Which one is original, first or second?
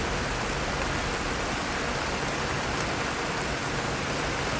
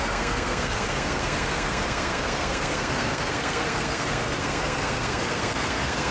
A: first